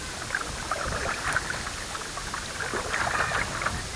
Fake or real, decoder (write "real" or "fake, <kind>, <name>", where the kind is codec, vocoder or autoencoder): real